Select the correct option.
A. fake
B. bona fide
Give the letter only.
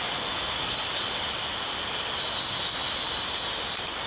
B